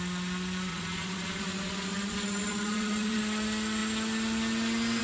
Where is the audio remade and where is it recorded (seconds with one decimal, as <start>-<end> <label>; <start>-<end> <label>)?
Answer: 0.0-0.7 recorded; 0.7-3.2 remade; 3.2-5.0 recorded

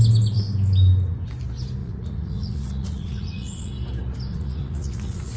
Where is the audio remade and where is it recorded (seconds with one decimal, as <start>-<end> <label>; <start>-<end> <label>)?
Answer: 0.0-1.8 recorded; 1.8-3.7 remade; 3.7-4.3 recorded; 4.3-5.4 remade

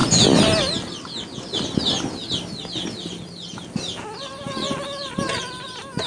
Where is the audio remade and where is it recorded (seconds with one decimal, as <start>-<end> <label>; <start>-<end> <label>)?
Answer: 0.0-6.1 recorded

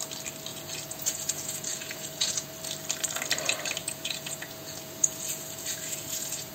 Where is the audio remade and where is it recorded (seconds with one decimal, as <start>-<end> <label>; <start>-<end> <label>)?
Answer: 0.0-0.5 recorded; 0.5-2.5 remade; 2.5-3.8 recorded; 3.8-6.5 remade

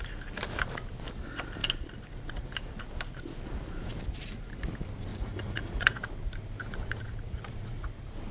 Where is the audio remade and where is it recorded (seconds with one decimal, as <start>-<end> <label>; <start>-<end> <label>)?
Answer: 0.0-5.1 recorded; 5.1-6.1 remade; 6.1-6.8 recorded; 6.8-7.9 remade; 7.9-8.3 recorded

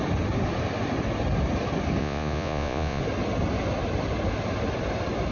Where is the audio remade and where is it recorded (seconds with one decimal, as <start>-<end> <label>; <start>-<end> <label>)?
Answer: 0.0-2.0 recorded; 2.0-3.0 remade; 3.0-5.3 recorded

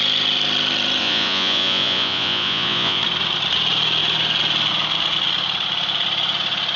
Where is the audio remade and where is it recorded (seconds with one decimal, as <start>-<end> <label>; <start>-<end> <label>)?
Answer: 0.0-1.0 recorded; 1.0-3.0 remade; 3.0-6.8 recorded

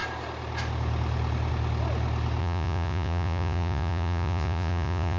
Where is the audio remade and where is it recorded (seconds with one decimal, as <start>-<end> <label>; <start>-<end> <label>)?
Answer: 0.0-2.4 recorded; 2.4-5.2 remade